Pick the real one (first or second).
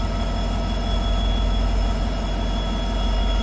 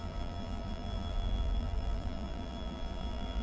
first